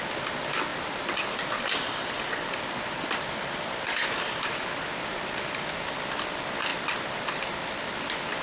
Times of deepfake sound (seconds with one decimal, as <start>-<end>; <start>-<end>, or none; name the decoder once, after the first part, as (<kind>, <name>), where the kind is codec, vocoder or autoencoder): none